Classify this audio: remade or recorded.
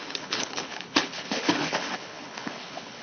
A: remade